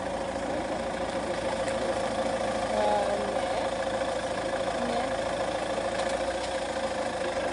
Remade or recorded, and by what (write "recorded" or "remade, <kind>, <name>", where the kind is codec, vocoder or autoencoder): recorded